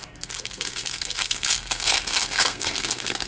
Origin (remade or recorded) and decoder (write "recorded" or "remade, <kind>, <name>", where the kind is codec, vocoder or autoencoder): remade, codec, SNAC